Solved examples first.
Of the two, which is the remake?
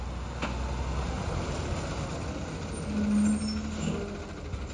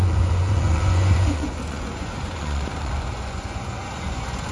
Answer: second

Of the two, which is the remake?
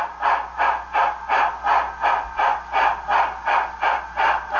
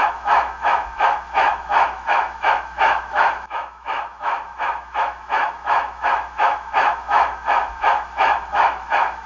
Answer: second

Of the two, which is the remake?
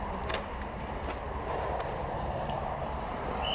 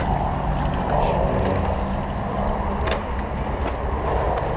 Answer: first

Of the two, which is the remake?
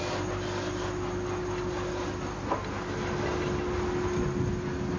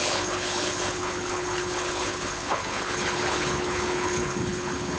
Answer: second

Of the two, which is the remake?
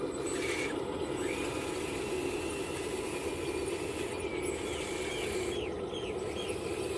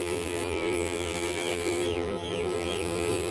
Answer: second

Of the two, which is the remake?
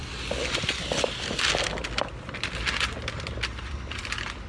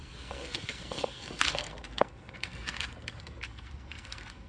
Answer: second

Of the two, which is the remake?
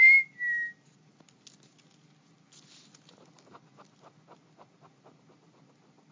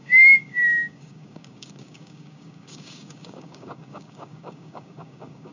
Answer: second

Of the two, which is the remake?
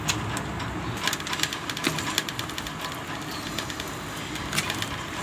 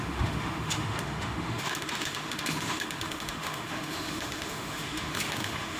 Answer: second